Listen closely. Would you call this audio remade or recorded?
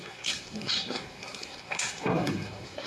remade